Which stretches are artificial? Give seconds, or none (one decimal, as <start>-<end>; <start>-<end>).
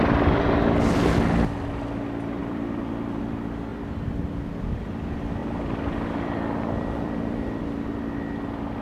2.4-3.2; 3.7-4.2; 5.4-7.6